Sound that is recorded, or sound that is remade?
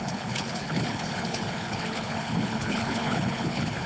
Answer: remade